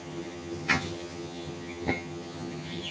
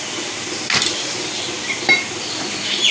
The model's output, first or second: first